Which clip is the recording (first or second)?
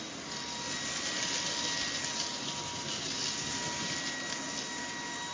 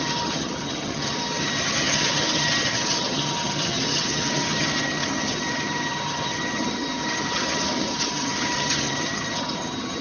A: first